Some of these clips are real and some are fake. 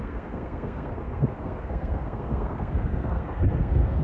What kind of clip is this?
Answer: fake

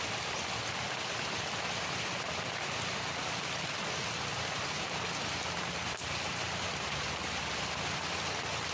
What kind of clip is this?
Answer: real